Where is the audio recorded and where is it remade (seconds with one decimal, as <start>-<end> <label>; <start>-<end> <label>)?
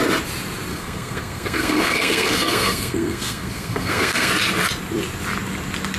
0.0-0.7 recorded; 0.7-4.3 remade; 4.3-6.0 recorded